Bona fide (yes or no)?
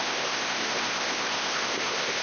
no